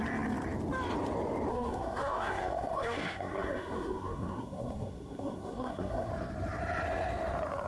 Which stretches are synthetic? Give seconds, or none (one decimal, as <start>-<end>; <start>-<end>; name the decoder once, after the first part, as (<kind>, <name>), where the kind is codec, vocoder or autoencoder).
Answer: 1.5-6.1 (codec, SNAC)